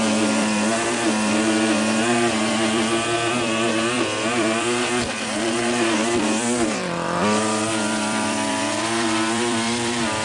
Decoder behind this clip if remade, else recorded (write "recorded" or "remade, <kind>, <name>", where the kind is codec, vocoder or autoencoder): remade, vocoder, BigVGAN v2